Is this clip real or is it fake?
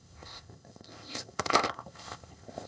fake